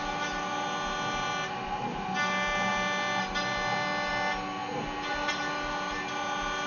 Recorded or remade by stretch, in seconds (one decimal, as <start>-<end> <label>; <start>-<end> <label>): 0.0-6.7 recorded